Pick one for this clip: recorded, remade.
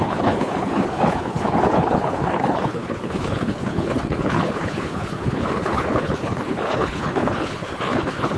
remade